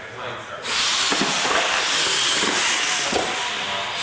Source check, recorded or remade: recorded